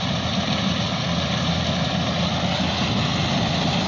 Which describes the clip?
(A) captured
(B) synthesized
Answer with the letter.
A